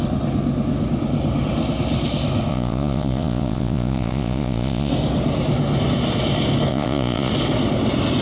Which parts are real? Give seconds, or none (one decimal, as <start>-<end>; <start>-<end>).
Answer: 0.0-2.5; 4.9-6.7; 7.3-8.2